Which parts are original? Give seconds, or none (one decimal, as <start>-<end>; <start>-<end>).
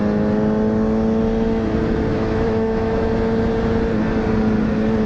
0.0-2.1; 3.1-5.1